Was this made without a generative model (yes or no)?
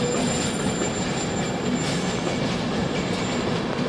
yes